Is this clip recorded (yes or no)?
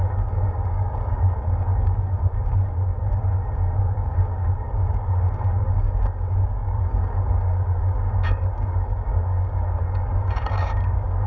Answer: no